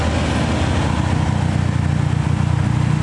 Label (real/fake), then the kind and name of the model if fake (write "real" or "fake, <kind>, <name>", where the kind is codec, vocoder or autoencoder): real